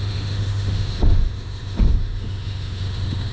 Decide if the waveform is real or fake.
fake